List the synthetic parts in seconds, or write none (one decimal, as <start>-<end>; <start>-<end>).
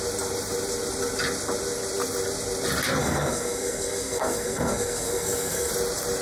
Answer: 3.0-5.7